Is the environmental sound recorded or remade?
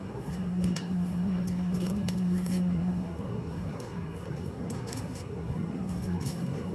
remade